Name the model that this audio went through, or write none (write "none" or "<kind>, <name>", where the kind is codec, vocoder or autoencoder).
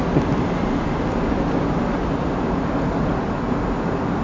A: none